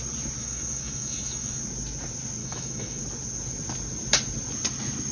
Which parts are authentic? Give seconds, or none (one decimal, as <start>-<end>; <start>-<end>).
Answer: 0.0-0.4; 1.6-2.4; 3.0-5.1